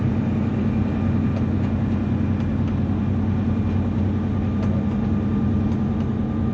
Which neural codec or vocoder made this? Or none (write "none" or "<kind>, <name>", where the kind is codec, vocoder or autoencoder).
none